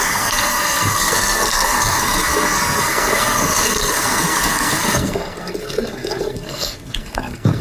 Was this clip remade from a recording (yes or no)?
yes